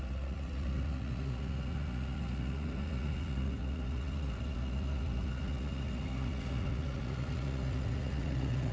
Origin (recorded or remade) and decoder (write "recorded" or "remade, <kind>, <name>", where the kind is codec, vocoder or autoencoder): remade, vocoder, Vocos